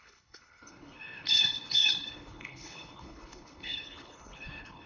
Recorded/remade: remade